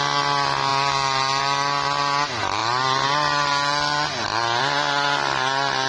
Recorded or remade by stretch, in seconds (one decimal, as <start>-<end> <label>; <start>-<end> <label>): 0.0-5.9 recorded